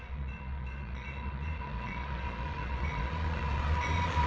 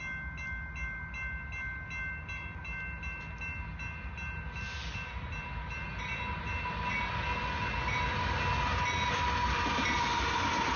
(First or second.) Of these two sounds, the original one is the second